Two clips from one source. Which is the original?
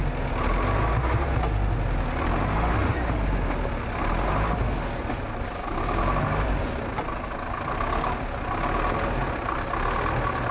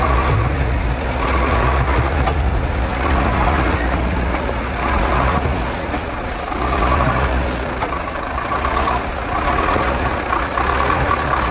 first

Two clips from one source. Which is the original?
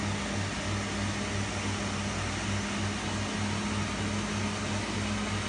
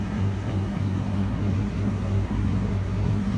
first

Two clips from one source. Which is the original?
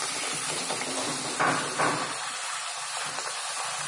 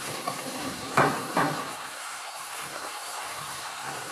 first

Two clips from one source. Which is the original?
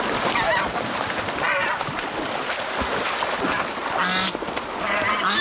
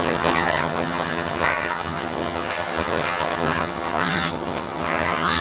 first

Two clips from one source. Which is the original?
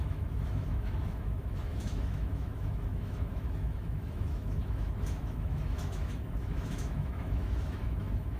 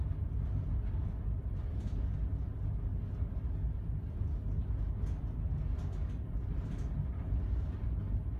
second